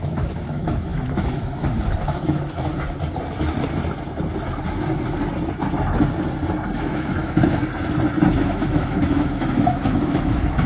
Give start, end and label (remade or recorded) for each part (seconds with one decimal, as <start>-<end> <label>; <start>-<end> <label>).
0.0-2.7 remade; 2.7-6.8 recorded; 6.8-7.6 remade; 7.6-8.4 recorded; 8.4-10.7 remade